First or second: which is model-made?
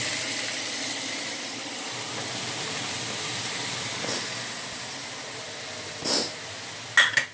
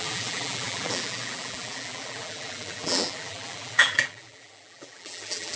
second